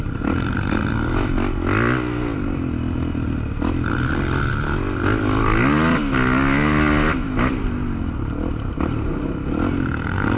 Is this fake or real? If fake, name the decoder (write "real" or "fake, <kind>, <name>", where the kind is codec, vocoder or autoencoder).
real